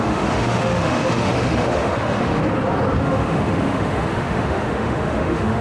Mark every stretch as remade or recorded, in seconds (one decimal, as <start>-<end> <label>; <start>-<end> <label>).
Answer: 0.0-2.4 remade; 2.4-3.0 recorded; 3.0-5.6 remade